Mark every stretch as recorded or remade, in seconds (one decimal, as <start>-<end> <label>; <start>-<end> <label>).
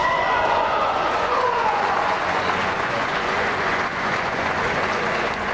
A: 0.0-5.5 remade